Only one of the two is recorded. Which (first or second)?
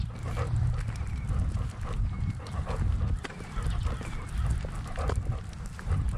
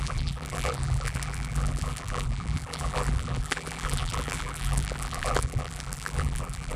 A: first